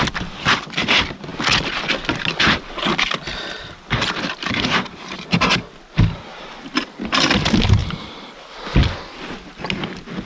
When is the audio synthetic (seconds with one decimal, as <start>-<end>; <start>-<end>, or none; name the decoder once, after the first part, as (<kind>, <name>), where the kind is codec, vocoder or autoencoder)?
none